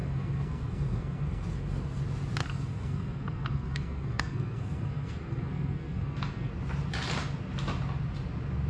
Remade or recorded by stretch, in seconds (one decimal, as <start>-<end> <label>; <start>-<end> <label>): 0.0-2.0 remade; 2.0-2.4 recorded; 2.4-6.5 remade; 6.5-8.7 recorded